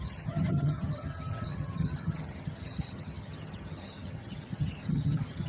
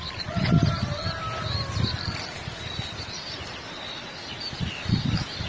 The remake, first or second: first